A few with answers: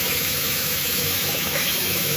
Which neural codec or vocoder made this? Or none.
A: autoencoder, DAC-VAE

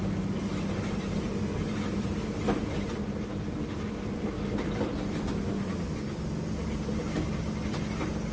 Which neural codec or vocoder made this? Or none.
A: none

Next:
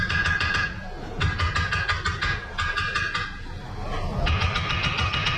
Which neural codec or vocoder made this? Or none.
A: none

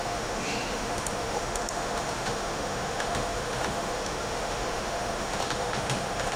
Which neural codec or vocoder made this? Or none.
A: autoencoder, DAC-VAE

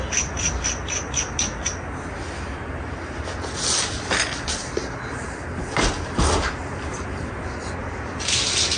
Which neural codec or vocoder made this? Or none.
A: none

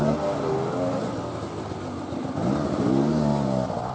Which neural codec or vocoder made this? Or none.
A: none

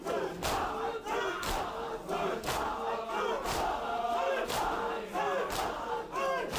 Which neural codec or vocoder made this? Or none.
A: none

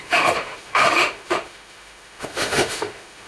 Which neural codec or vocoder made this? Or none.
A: autoencoder, DAC-VAE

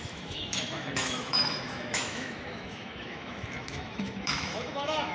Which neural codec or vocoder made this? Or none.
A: autoencoder, DAC-VAE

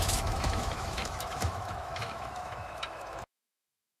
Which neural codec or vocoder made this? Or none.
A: autoencoder, DAC-VAE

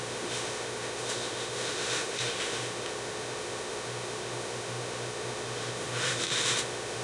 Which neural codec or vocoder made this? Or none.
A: autoencoder, DAC-VAE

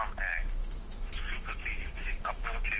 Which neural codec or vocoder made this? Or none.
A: autoencoder, DAC-VAE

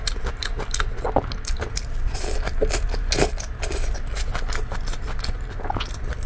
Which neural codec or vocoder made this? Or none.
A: none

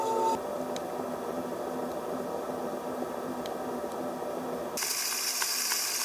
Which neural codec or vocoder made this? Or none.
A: none